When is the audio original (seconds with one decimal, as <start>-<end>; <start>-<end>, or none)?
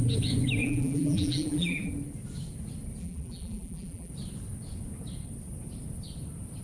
0.0-0.6; 1.9-3.0; 4.1-6.6